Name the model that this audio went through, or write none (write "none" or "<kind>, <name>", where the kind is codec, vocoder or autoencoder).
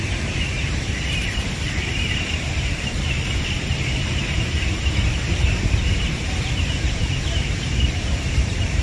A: vocoder, BigVGAN v2